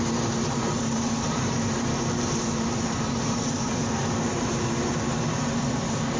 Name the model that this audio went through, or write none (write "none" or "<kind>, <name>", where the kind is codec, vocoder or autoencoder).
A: vocoder, BigVGAN v2